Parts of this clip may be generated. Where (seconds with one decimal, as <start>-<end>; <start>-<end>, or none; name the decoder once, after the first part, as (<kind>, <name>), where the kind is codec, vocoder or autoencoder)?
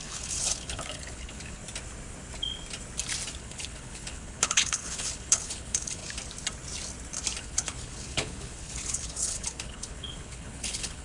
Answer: 0.0-1.6 (codec, HILCodec); 3.4-6.0; 7.4-11.0